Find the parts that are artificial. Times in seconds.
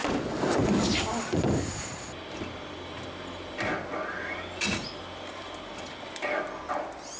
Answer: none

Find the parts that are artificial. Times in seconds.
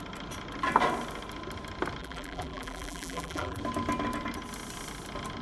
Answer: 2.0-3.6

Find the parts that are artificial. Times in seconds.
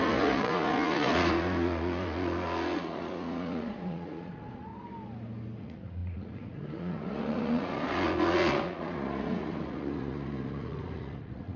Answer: 0.0-4.7; 5.6-11.6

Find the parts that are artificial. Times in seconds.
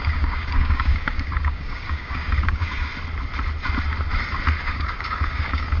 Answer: 0.0-2.9; 4.6-5.8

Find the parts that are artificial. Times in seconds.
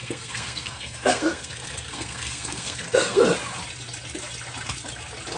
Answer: 0.0-3.2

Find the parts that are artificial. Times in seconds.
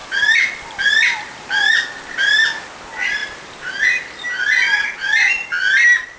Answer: none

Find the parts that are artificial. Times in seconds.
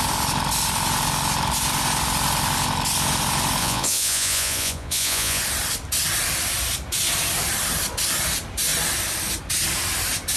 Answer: 3.6-5.4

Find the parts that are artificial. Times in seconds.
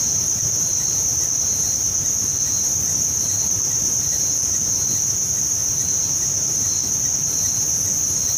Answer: 0.0-8.4